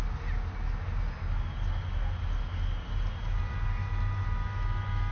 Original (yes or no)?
yes